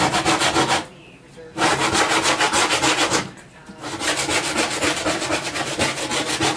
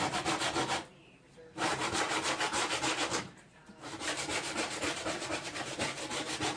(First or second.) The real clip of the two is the first